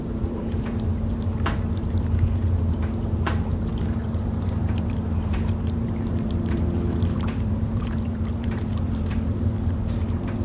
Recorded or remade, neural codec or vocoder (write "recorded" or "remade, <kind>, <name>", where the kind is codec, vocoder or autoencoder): remade, vocoder, BigVGAN v2